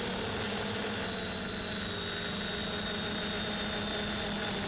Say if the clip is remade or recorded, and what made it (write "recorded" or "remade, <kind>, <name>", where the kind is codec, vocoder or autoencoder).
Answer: recorded